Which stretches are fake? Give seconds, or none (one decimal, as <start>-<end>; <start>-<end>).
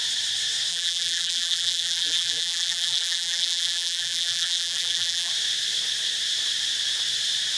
0.7-5.3